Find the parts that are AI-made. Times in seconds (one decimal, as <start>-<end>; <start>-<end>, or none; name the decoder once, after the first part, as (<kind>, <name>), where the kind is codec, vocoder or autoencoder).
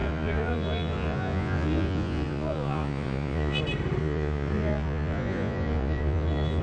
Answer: 0.0-3.6 (vocoder, Vocos); 4.0-6.6